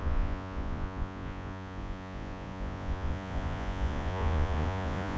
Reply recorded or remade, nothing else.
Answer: remade